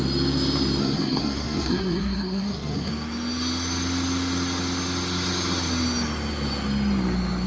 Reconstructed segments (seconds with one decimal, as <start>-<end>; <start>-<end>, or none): 0.8-2.9